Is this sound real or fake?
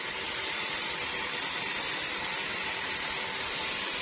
real